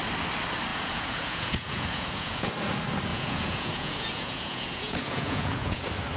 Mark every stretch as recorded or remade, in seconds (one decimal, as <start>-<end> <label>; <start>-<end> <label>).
0.0-0.7 recorded; 0.7-2.5 remade; 2.5-3.1 recorded; 3.1-5.8 remade; 5.8-6.2 recorded